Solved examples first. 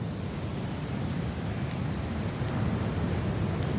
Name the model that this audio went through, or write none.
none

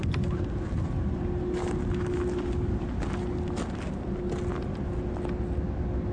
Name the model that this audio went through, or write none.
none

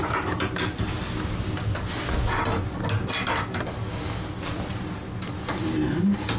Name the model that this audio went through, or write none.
none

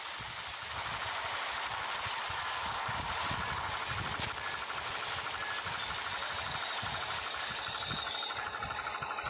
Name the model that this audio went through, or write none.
vocoder, BigVGAN v2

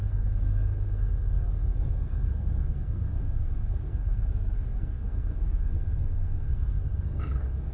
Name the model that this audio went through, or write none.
codec, SNAC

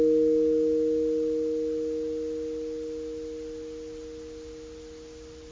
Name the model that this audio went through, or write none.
none